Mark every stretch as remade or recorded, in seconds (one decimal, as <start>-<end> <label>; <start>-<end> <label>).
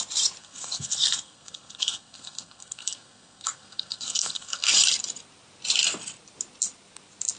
0.0-0.4 recorded; 0.4-4.7 remade; 4.7-7.4 recorded